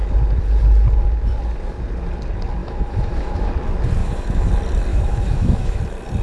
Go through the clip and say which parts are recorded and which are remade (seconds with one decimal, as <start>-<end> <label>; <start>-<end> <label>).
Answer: 0.0-2.6 recorded; 2.6-3.5 remade; 3.5-4.0 recorded; 4.0-4.5 remade; 4.5-4.9 recorded; 4.9-5.8 remade; 5.8-6.2 recorded